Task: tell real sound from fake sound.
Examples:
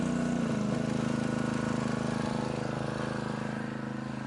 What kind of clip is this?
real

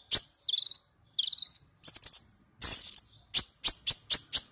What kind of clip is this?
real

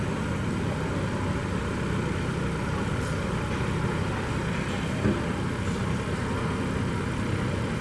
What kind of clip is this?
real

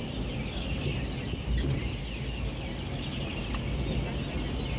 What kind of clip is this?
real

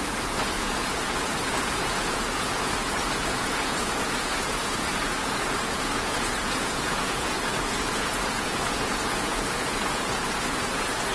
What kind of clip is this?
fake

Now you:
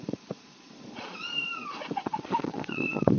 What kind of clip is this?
fake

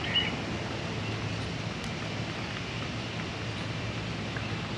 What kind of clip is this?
real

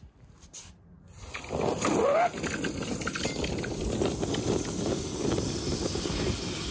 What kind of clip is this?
real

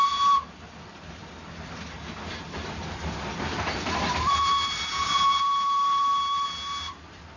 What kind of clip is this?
real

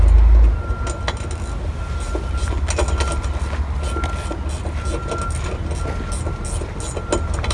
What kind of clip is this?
real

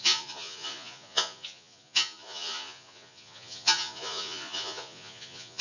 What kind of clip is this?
fake